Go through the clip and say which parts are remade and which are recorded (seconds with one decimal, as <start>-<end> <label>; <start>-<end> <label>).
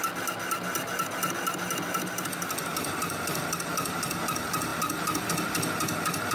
0.0-6.3 recorded